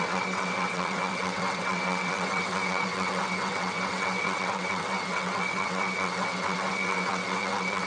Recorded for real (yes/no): no